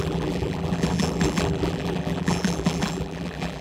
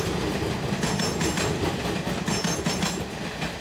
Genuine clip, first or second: second